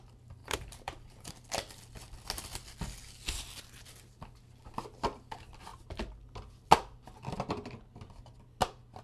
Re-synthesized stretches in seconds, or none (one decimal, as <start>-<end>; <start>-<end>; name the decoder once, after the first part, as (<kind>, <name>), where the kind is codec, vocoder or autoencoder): 0.4-1.3 (vocoder, BigVGAN v2)